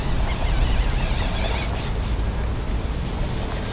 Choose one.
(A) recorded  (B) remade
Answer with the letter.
A